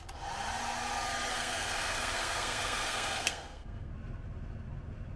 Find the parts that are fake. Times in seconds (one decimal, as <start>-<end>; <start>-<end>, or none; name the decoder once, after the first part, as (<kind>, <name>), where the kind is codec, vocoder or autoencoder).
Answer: 1.3-3.9 (codec, SNAC)